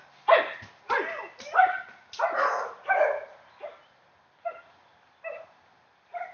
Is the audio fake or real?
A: real